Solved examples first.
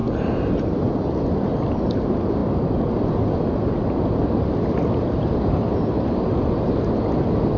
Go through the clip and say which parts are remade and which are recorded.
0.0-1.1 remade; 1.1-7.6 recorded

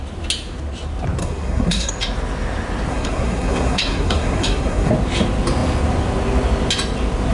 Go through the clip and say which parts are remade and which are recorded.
0.0-1.2 recorded; 1.2-1.9 remade; 1.9-2.9 recorded; 2.9-4.9 remade; 4.9-7.3 recorded

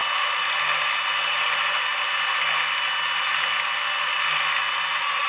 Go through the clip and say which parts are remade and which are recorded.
0.0-5.3 recorded

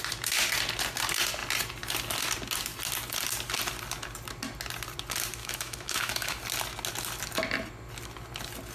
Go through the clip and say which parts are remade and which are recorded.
0.0-5.4 recorded; 5.4-6.4 remade; 6.4-8.7 recorded